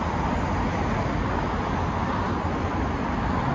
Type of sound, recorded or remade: recorded